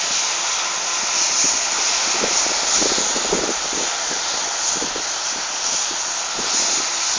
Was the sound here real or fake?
real